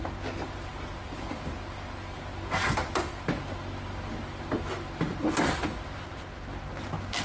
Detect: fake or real real